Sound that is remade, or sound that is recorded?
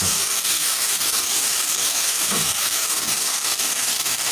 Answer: remade